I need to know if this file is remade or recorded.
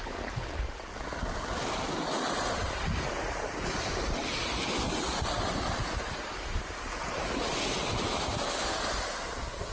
recorded